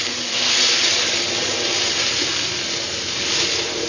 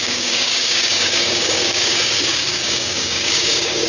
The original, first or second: first